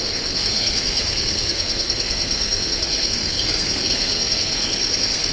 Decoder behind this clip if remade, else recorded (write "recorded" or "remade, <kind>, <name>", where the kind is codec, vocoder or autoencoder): remade, codec, SNAC